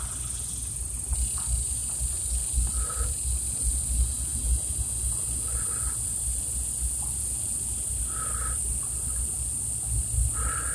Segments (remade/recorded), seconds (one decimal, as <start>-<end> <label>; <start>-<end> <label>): 0.0-10.7 recorded